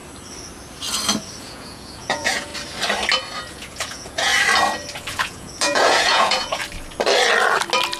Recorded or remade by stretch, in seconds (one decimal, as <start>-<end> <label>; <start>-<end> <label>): 0.0-1.4 recorded; 1.4-2.5 remade; 2.5-3.5 recorded; 3.5-4.3 remade; 4.3-5.1 recorded; 5.1-6.6 remade; 6.6-8.0 recorded